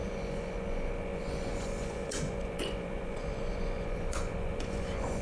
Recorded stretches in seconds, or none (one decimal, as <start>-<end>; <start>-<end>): none